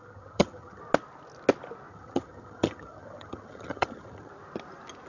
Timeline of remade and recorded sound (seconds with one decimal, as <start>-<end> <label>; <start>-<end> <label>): 0.0-0.8 remade; 0.8-1.9 recorded; 1.9-4.3 remade; 4.3-5.1 recorded